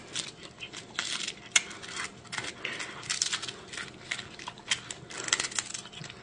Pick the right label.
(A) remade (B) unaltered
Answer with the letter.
B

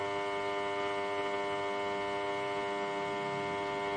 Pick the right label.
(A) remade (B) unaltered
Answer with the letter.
B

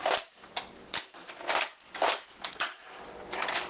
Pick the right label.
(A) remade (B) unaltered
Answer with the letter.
B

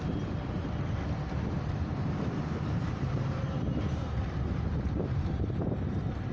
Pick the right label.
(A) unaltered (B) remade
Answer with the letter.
B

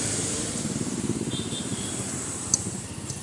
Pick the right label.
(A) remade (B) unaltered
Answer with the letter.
A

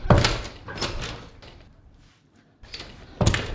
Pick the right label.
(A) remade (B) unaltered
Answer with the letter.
B